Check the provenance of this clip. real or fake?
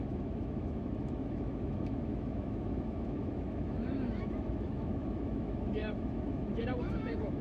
fake